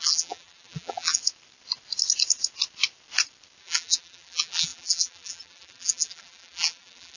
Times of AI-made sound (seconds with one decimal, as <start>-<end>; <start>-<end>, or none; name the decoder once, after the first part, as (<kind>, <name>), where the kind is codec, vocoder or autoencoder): 0.0-1.2 (vocoder, BigVGAN v2); 3.6-7.2